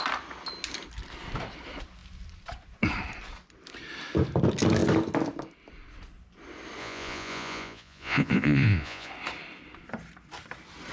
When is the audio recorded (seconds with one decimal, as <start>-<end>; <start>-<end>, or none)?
0.0-6.8; 9.1-10.9